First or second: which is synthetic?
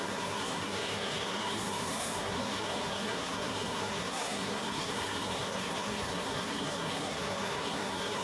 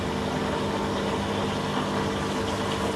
first